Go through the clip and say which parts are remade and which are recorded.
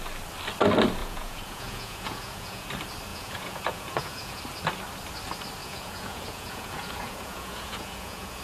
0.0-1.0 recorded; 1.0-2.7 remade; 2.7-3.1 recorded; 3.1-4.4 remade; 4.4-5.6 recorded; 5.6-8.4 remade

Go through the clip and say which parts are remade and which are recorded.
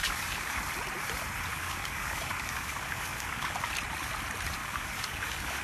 0.0-0.6 remade; 0.6-1.5 recorded; 1.5-3.7 remade; 3.7-4.6 recorded; 4.6-5.6 remade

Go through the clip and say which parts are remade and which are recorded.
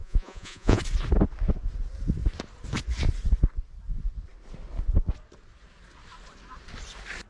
0.0-0.8 remade; 0.8-7.3 recorded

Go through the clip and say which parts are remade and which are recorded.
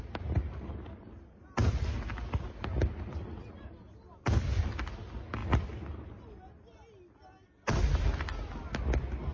0.0-9.3 recorded